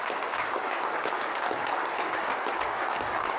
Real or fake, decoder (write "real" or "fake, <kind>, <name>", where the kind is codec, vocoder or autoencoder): fake, codec, DAC